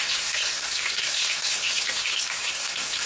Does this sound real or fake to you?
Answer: fake